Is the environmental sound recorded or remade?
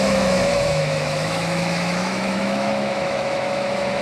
remade